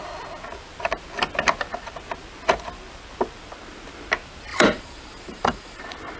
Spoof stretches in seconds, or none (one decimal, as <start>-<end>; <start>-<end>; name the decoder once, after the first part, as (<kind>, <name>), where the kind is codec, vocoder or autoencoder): 4.5-5.8 (vocoder, BigVGAN v2)